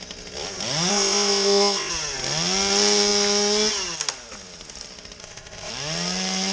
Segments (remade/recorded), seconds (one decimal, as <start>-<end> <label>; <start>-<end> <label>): 0.0-0.9 recorded; 0.9-1.9 remade; 1.9-5.2 recorded; 5.2-5.7 remade; 5.7-6.5 recorded